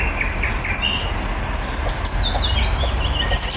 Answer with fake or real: real